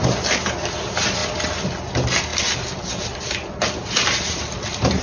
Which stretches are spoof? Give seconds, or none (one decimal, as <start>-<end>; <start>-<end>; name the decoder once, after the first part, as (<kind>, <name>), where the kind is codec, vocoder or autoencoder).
1.2-1.8 (vocoder, BigVGAN v2); 2.3-5.0